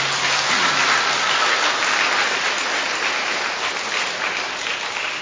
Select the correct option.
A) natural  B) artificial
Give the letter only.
A